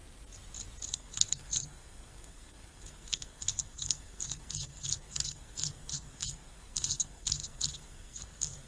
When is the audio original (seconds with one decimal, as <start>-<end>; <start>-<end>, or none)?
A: 0.0-0.9